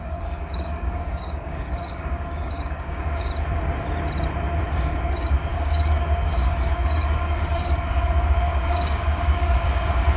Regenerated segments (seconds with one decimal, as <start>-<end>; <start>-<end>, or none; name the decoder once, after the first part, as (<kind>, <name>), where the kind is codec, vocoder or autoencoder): 0.0-3.3 (codec, DAC); 4.7-10.2